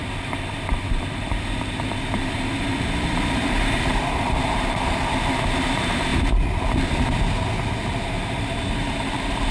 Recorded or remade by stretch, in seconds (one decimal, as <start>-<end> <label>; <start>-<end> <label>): 0.0-6.1 remade; 6.1-8.3 recorded; 8.3-9.5 remade